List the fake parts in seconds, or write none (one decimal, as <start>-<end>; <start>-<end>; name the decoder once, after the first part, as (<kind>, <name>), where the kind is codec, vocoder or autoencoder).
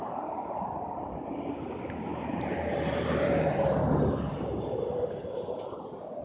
2.1-5.0 (vocoder, BigVGAN v2)